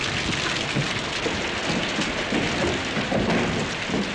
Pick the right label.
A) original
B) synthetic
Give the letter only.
A